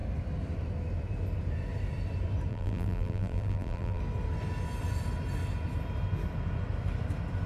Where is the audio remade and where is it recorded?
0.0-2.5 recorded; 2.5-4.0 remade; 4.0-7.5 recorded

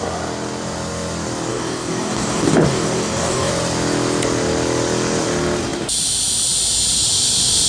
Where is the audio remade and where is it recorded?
0.0-1.5 recorded; 1.5-3.5 remade; 3.5-7.7 recorded